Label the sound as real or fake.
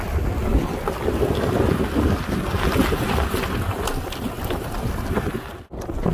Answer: real